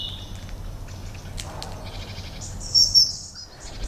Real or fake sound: real